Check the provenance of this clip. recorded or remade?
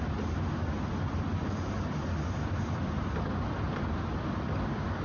recorded